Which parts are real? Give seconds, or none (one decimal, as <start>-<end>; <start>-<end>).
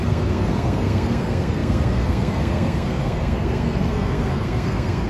none